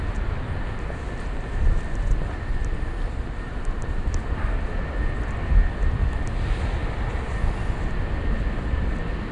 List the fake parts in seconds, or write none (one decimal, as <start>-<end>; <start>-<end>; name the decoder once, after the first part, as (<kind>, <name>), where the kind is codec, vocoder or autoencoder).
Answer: none